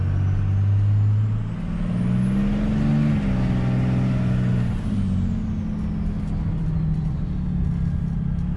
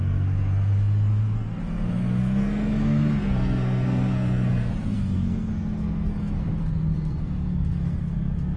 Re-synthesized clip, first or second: second